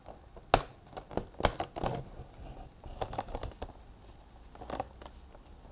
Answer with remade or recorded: recorded